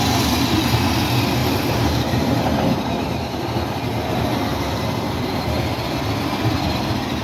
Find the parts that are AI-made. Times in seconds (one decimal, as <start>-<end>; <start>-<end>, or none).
1.4-3.4; 4.5-5.3

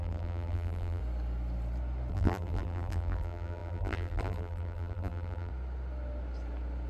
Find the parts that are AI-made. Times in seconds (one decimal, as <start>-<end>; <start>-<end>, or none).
0.0-1.0; 2.1-5.5

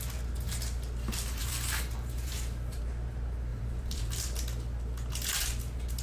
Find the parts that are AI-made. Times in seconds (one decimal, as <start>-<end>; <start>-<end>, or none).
1.4-2.8; 3.5-4.2

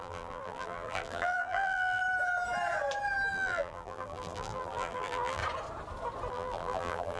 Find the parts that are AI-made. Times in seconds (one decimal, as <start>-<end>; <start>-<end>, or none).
0.0-2.0; 3.3-5.4; 6.3-7.2

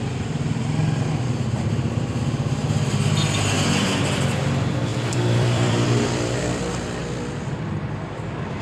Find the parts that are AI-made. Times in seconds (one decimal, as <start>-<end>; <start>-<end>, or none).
4.9-6.6

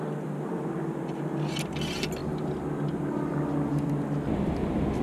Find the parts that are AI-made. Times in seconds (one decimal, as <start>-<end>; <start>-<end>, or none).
none

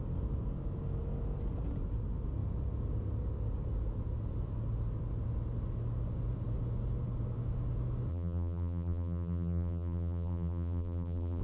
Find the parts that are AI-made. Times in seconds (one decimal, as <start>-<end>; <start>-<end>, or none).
8.1-11.4

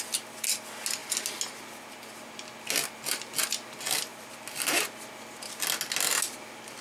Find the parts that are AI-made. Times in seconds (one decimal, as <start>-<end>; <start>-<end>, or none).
4.1-5.5